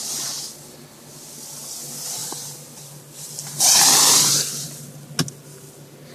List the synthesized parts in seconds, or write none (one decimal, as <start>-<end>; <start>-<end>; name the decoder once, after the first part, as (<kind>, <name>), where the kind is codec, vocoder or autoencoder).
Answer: 0.0-0.7 (vocoder, BigVGAN v2)